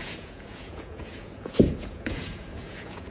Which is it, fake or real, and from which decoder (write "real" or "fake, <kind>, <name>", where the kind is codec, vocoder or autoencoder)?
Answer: fake, vocoder, Vocos